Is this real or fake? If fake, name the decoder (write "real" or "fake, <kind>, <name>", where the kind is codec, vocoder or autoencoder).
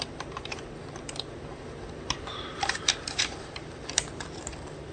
fake, vocoder, BigVGAN v2